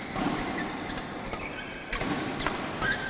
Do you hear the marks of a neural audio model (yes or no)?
no